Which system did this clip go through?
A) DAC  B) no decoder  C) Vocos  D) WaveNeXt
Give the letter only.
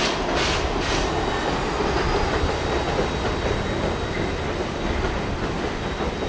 B